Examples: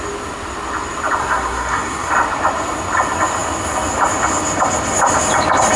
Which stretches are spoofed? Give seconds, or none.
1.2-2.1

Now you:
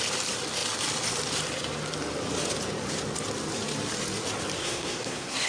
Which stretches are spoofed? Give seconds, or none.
4.6-5.5

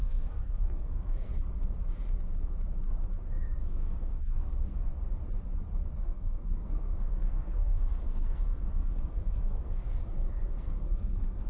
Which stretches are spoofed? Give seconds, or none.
0.0-1.3; 3.6-4.9; 6.0-11.5

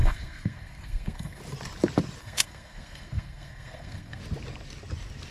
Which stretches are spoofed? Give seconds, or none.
0.0-1.4; 2.2-4.2

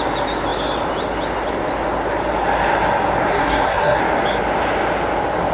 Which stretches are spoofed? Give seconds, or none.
3.3-4.0

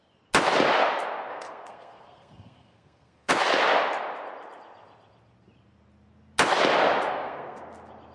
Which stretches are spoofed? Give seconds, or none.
1.3-3.3; 7.1-7.6